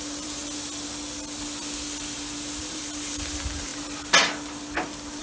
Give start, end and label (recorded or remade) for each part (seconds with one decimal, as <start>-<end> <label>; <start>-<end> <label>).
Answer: 0.0-0.4 remade; 0.4-2.6 recorded; 2.6-3.7 remade; 3.7-5.2 recorded